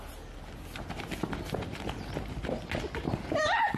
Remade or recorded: recorded